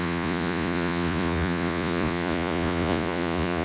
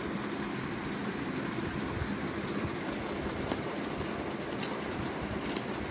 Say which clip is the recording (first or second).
second